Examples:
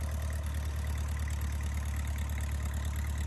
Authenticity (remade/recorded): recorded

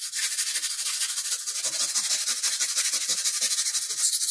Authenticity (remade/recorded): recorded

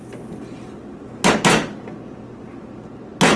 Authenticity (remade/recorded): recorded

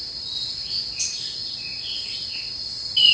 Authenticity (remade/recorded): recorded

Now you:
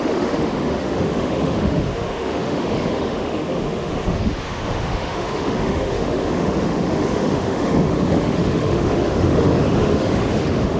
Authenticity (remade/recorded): remade